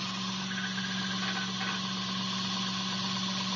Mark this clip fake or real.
real